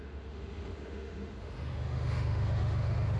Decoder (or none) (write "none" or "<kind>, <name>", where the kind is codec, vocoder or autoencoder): autoencoder, DAC-VAE